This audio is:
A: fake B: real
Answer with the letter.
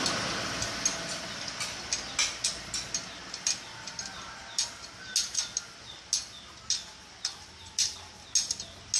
B